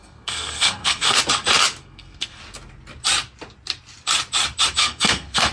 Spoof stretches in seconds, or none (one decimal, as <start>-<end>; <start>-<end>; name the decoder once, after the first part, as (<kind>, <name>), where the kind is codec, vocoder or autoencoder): 0.0-1.2 (codec, SNAC); 1.8-2.4; 4.8-5.5